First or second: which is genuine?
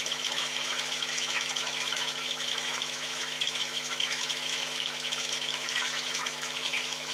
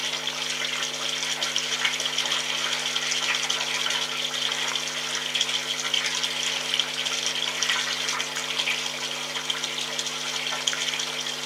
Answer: second